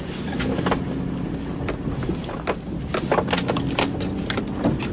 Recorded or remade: recorded